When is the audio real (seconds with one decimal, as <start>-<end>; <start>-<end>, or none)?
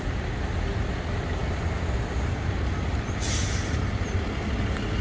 0.0-5.0